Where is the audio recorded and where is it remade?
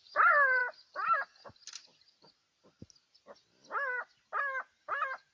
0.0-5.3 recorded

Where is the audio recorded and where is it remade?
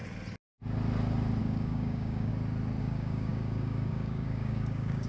0.0-1.4 recorded; 1.4-2.3 remade; 2.3-2.8 recorded; 2.8-5.1 remade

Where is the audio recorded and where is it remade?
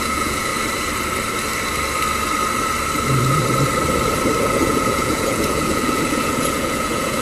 0.0-0.5 remade; 0.5-4.4 recorded; 4.4-7.2 remade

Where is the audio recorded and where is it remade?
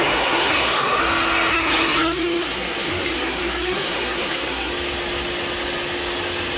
0.0-1.0 remade; 1.0-1.5 recorded; 1.5-4.7 remade; 4.7-6.6 recorded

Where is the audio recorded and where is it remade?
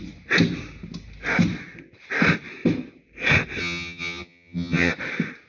0.0-3.6 recorded; 3.6-4.9 remade; 4.9-5.5 recorded